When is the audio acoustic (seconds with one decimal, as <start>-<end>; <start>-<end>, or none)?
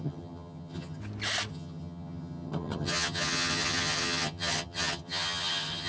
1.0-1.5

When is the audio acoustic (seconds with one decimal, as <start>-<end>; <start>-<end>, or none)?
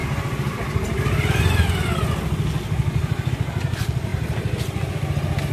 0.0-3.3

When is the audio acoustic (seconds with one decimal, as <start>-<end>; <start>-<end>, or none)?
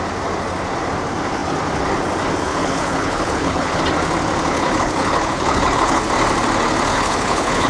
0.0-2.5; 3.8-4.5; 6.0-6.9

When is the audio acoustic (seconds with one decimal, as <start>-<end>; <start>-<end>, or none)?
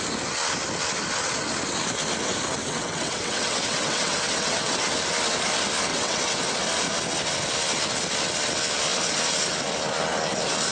0.0-2.6; 4.8-5.9; 6.4-10.7